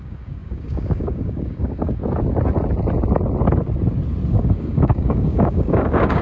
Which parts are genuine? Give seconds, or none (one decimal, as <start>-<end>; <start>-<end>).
2.0-4.3